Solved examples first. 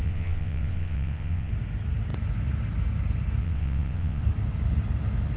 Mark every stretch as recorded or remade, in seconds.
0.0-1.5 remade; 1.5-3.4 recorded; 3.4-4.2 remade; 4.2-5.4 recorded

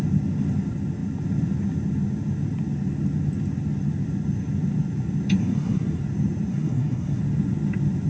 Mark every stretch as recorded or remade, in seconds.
0.0-5.4 recorded; 5.4-6.0 remade; 6.0-6.5 recorded; 6.5-7.2 remade; 7.2-8.1 recorded

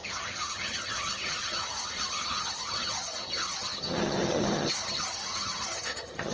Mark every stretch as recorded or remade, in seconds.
0.0-6.3 remade

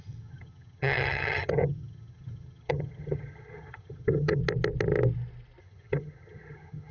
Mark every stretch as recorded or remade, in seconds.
0.0-4.4 remade; 4.4-5.6 recorded; 5.6-6.9 remade

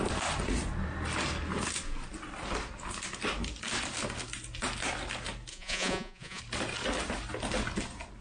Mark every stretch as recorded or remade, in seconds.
0.0-5.5 recorded; 5.5-6.4 remade; 6.4-8.2 recorded

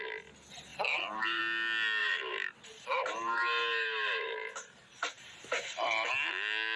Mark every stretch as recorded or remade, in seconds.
0.0-0.7 recorded; 0.7-1.4 remade; 1.4-2.0 recorded; 2.0-6.1 remade; 6.1-6.8 recorded

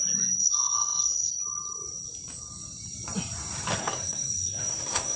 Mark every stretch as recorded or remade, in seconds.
0.0-0.4 recorded; 0.4-1.3 remade; 1.3-3.8 recorded; 3.8-5.2 remade